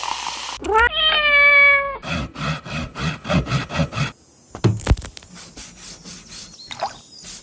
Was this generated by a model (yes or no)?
no